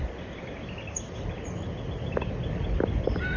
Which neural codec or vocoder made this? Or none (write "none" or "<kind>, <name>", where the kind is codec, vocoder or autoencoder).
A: none